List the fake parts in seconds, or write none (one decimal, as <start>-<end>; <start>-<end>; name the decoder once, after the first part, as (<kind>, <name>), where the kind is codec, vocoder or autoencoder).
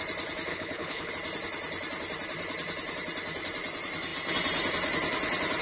0.5-1.1 (codec, HILCodec)